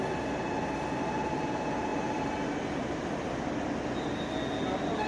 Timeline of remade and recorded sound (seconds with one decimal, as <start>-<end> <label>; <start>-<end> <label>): 0.0-5.1 recorded